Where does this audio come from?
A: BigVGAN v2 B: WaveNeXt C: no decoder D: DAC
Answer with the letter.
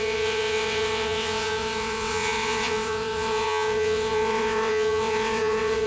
B